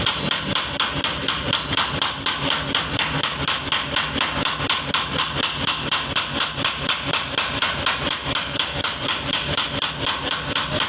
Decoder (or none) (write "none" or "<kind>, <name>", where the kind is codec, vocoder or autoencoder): none